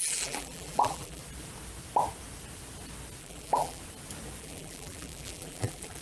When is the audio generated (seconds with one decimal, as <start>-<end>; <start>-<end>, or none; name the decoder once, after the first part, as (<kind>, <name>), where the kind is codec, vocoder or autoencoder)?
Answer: 0.0-1.2 (vocoder, BigVGAN v2); 3.2-3.8; 4.4-6.0